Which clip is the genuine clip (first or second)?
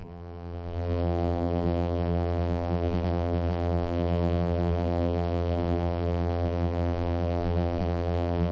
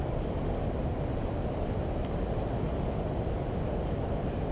second